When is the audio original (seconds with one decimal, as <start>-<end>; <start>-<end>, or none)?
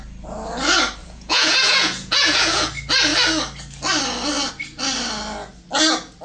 0.0-1.0; 2.7-6.2